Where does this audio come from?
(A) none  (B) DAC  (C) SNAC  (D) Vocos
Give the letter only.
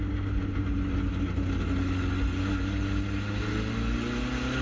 A